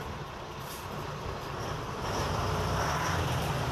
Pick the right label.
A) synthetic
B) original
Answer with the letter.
B